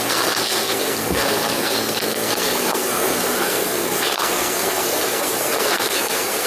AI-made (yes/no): yes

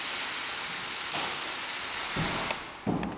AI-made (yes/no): no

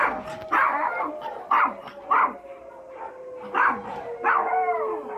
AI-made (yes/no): no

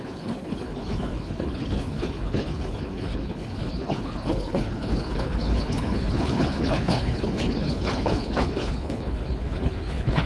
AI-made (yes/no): yes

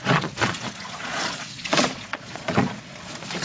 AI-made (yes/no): yes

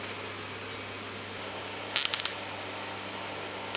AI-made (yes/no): no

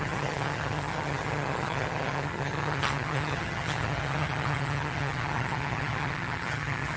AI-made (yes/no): yes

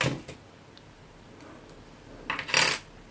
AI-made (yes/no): no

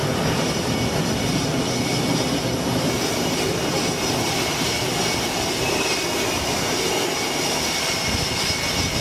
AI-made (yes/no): no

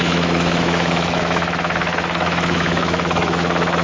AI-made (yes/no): yes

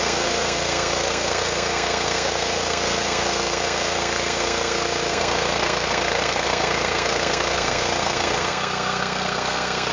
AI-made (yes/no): yes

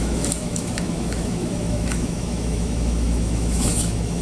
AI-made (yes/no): yes